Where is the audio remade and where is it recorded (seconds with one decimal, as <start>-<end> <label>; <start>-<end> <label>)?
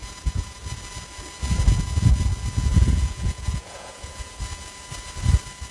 0.0-0.6 remade; 0.6-2.7 recorded; 2.7-4.4 remade; 4.4-5.7 recorded